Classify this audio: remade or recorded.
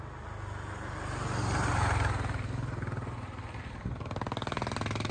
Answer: recorded